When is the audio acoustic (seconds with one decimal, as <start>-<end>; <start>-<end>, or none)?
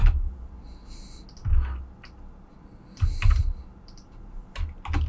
0.0-5.1